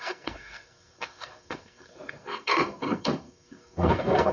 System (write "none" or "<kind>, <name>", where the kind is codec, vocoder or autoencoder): codec, SNAC